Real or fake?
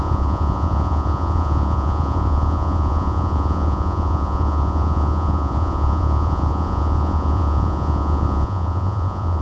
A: fake